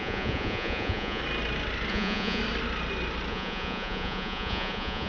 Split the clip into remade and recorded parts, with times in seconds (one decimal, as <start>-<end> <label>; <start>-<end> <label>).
0.0-1.2 remade; 1.2-1.9 recorded; 1.9-2.4 remade; 2.4-3.3 recorded; 3.3-5.1 remade